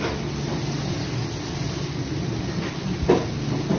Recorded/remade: recorded